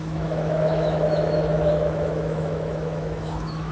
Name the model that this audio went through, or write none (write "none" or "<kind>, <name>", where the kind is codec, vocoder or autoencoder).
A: autoencoder, DAC-VAE